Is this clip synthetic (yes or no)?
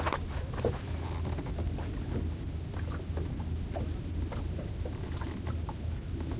no